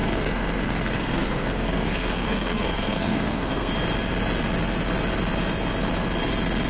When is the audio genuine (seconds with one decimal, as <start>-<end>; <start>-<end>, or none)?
3.7-6.7